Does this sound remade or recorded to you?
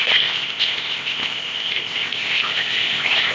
remade